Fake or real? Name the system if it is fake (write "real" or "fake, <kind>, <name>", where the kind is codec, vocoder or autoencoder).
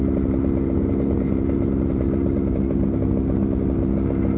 real